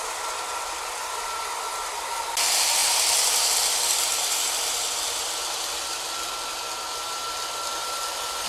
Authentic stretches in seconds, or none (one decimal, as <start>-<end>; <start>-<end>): 0.0-7.8

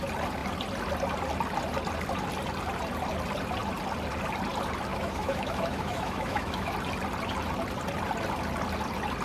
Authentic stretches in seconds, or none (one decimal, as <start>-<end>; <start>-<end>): 0.0-4.9; 6.7-9.2

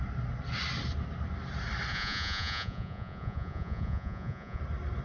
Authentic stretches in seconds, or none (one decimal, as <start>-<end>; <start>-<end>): 0.0-1.9; 4.6-5.0

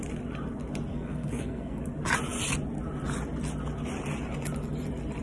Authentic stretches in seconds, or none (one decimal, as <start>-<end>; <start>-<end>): 0.0-0.9; 1.8-5.2

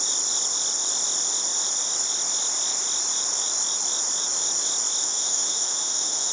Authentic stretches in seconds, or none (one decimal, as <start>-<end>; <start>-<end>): 0.0-5.0

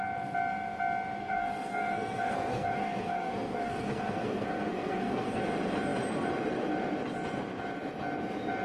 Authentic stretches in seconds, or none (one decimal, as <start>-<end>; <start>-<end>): 0.0-1.2; 5.4-8.6

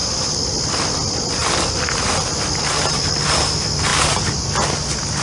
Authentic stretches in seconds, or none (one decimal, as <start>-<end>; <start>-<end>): 0.0-5.2

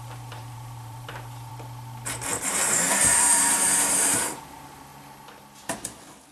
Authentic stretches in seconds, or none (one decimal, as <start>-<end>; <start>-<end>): 1.5-2.4; 4.9-6.3